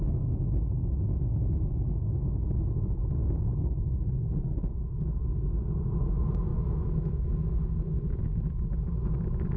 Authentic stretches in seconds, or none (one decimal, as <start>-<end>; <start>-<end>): 0.0-2.2; 3.5-6.5; 7.1-9.6